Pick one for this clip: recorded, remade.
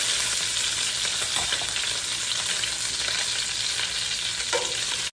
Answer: recorded